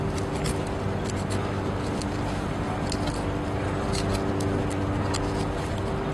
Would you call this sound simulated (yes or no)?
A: no